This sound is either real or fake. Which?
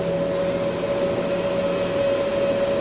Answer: real